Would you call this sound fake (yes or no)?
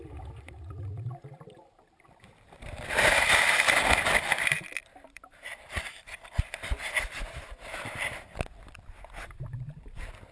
yes